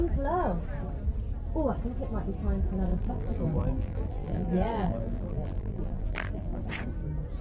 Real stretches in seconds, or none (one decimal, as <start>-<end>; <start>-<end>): 0.0-2.9; 6.6-7.4